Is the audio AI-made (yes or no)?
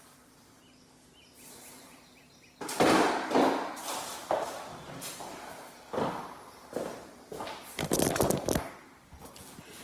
yes